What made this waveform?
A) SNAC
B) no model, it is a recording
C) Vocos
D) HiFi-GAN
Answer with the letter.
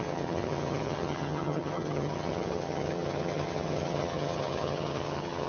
D